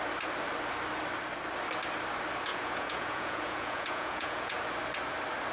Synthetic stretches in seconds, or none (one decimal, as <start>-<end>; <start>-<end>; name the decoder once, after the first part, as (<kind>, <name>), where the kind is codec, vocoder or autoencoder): 2.5-4.6 (vocoder, Vocos)